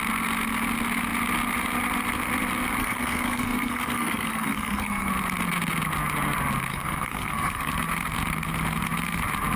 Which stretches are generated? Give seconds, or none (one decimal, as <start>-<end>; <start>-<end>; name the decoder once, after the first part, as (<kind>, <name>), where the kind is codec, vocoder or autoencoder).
2.8-5.1 (codec, SNAC); 6.7-7.7